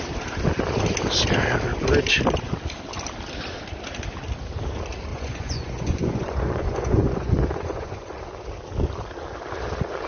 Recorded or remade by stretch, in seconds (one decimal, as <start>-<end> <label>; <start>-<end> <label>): 0.0-5.1 recorded; 5.1-8.2 remade; 8.2-10.1 recorded